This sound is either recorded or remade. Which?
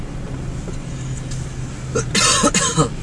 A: recorded